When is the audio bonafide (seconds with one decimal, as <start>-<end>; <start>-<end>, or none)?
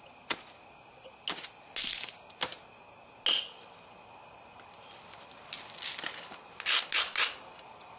0.0-8.0